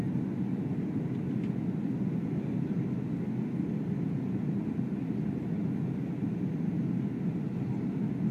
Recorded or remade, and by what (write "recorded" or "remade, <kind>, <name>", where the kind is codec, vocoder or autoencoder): recorded